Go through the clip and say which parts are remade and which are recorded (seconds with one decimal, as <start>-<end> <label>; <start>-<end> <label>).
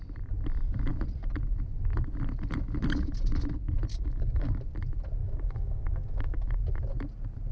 0.0-3.9 recorded; 3.9-4.6 remade; 4.6-5.2 recorded; 5.2-6.6 remade; 6.6-7.5 recorded